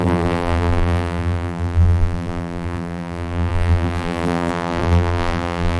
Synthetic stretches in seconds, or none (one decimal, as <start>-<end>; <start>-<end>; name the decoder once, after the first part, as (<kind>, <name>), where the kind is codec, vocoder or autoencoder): 0.0-5.8 (vocoder, BigVGAN v2)